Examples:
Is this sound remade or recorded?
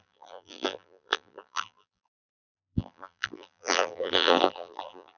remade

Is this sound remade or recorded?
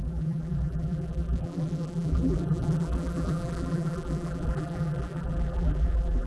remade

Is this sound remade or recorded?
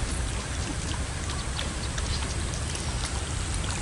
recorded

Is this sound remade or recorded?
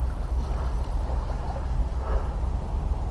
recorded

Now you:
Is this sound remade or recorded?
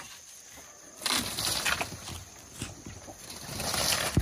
remade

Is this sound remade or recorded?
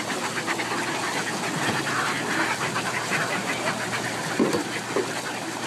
recorded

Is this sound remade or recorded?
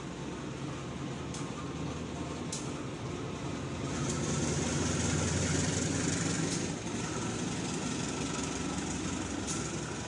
recorded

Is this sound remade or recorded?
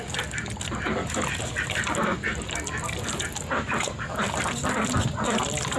recorded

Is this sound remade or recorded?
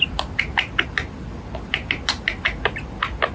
recorded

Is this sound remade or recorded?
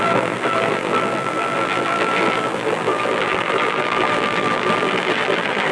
remade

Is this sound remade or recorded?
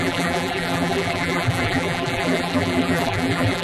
remade